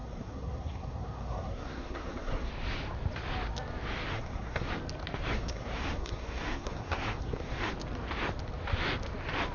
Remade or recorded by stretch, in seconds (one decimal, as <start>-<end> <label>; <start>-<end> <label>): 0.0-2.5 remade; 2.5-4.1 recorded; 4.1-4.7 remade; 4.7-5.3 recorded; 5.3-7.7 remade; 7.7-9.5 recorded